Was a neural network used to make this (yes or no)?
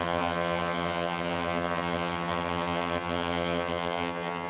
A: yes